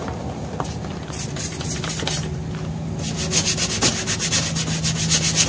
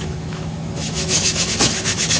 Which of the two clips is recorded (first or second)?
first